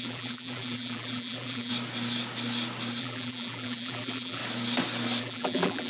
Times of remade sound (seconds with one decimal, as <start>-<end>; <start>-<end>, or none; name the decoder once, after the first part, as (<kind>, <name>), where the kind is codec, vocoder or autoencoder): 0.0-1.7 (vocoder, BigVGAN v2); 3.0-4.4; 5.2-5.9